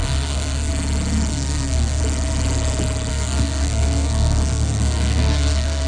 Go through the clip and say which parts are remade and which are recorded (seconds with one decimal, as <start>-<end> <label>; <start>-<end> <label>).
0.0-0.7 remade; 0.7-1.3 recorded; 1.3-2.0 remade; 2.0-3.1 recorded; 3.1-5.9 remade